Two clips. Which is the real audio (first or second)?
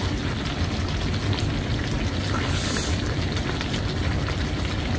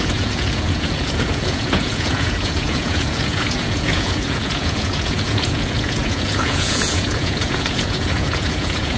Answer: first